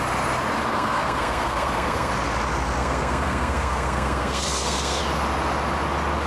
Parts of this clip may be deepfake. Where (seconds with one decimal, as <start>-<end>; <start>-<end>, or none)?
0.7-2.1; 2.8-5.0

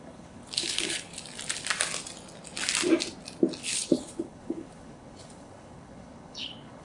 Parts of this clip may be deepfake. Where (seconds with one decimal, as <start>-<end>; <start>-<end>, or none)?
0.0-1.1; 3.6-6.8